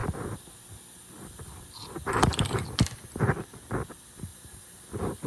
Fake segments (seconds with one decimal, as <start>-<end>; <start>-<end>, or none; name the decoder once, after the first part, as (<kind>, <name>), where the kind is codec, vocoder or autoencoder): 4.3-4.8 (vocoder, BigVGAN v2)